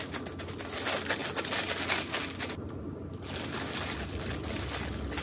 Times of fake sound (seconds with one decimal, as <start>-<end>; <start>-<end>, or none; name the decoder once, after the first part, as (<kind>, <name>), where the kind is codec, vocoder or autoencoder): none